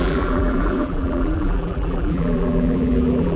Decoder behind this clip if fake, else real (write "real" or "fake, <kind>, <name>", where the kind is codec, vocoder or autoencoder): fake, vocoder, BigVGAN v2